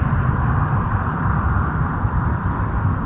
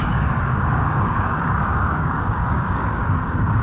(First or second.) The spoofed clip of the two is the second